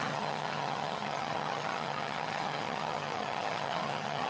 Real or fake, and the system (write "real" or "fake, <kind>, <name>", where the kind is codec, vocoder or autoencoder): fake, vocoder, HiFi-GAN